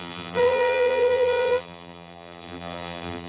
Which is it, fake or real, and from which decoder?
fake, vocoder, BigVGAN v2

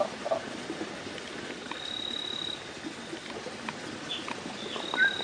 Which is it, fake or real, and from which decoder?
real